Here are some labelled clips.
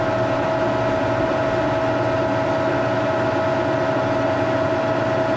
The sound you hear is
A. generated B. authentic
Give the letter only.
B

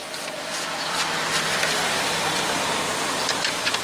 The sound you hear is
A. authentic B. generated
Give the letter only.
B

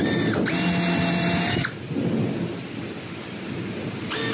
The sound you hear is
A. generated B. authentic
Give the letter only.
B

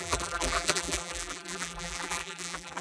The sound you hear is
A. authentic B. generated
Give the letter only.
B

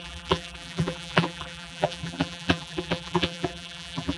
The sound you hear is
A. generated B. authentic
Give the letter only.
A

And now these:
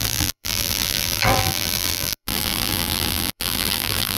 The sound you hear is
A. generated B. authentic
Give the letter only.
A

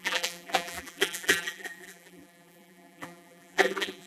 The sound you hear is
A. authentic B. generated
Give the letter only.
B